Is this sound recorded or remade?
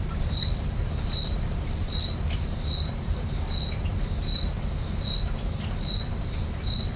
remade